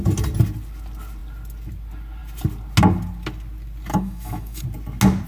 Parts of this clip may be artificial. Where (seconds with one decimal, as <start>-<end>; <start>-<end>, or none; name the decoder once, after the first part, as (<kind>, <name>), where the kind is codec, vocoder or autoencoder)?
3.9-4.6 (autoencoder, DAC-VAE)